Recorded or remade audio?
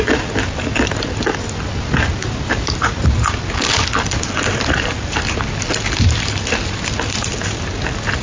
recorded